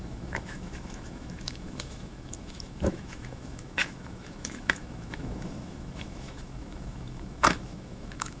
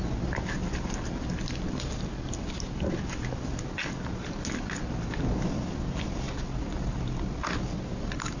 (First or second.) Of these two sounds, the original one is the second